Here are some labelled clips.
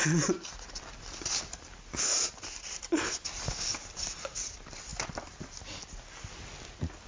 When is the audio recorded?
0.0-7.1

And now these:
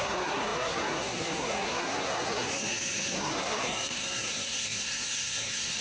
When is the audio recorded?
none

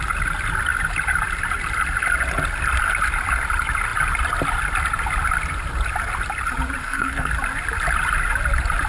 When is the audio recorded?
0.0-6.8; 7.3-8.9

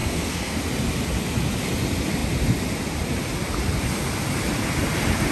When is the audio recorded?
0.6-5.3

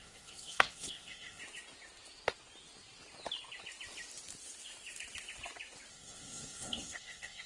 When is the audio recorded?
1.4-5.9

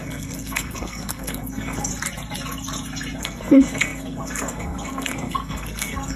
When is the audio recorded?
1.9-3.2

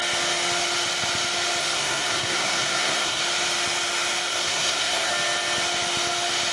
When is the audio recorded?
0.0-1.6; 3.2-4.3; 5.1-6.5